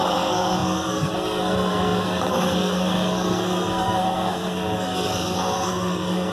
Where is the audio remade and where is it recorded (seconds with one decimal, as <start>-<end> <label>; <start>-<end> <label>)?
0.0-6.3 remade